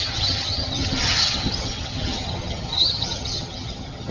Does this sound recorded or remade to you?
remade